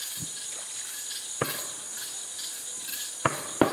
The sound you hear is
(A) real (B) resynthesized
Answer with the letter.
A